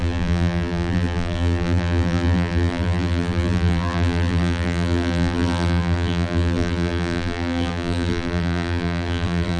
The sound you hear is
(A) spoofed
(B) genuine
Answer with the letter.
A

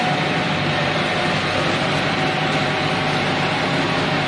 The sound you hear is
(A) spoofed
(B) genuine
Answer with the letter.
A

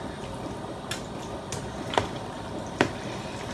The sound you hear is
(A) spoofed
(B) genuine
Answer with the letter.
A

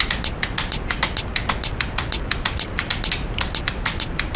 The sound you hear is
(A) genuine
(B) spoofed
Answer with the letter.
A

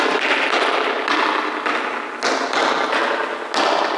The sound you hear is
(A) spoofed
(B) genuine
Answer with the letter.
B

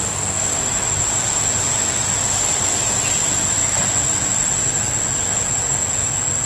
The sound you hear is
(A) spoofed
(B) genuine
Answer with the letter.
B